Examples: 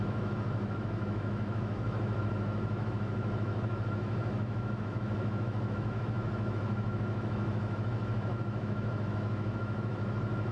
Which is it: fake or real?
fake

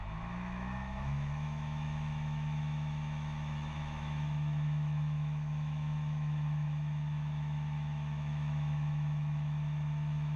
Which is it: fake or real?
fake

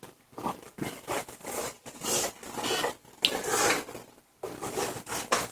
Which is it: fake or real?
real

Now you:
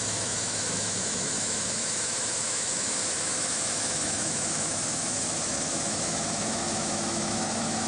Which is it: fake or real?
fake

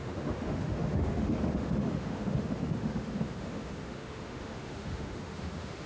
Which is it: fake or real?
fake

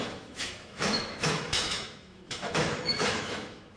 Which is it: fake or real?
fake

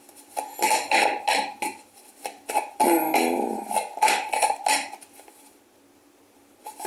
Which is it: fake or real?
real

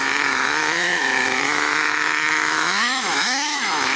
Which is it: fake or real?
fake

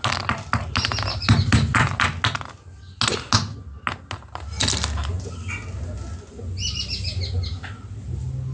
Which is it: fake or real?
real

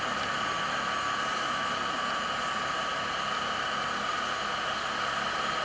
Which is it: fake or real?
real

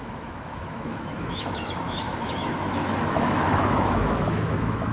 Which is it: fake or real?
fake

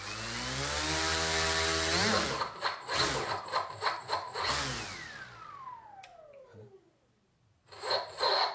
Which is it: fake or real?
real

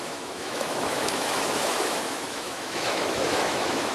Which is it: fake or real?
fake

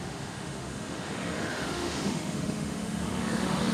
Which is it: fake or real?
fake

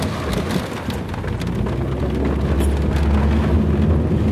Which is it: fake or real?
real